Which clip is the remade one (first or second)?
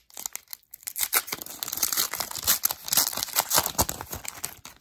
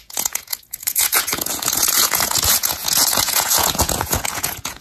second